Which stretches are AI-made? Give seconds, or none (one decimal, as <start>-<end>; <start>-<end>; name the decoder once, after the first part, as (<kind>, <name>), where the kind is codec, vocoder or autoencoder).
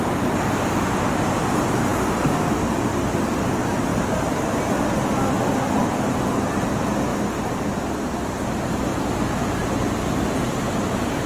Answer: 3.9-4.8 (vocoder, BigVGAN v2); 8.9-11.3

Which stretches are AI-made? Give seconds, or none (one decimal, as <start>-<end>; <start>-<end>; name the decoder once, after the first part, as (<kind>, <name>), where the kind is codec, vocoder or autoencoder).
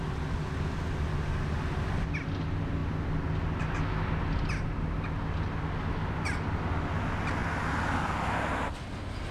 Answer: none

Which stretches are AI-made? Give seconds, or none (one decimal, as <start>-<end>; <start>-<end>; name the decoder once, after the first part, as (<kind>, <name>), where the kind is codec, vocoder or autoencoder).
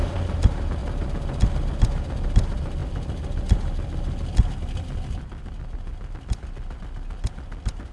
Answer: none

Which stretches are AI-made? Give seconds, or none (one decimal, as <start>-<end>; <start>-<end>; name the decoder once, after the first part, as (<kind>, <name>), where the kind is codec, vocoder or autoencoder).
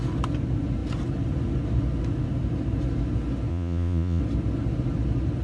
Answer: 3.5-4.2 (vocoder, Vocos)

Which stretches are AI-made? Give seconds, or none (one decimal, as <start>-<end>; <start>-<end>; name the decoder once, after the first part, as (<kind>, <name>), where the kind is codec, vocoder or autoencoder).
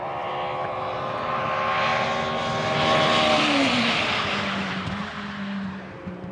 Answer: none